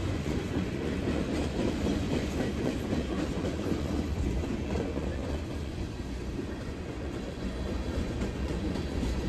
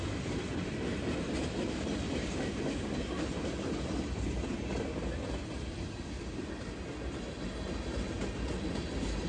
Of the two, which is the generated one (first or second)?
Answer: first